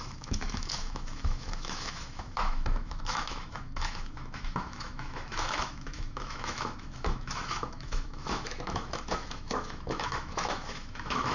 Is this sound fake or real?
fake